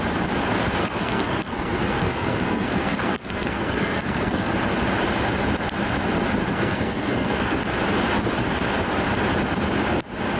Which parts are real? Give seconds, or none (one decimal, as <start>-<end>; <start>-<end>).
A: 0.0-0.8; 4.5-6.4; 7.6-10.4